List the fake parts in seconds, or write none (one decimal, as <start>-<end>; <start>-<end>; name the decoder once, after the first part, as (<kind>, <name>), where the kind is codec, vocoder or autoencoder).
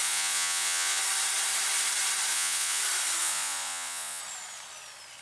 0.0-1.0 (vocoder, Vocos); 2.3-2.8; 3.2-4.2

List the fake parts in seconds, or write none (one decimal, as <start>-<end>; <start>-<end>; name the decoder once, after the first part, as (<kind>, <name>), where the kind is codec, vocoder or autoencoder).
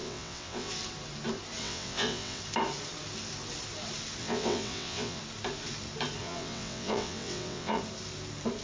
0.0-0.7 (vocoder, WaveNeXt); 1.6-2.4; 4.2-5.2; 6.2-7.8